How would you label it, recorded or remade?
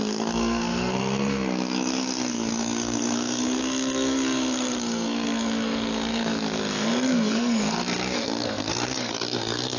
remade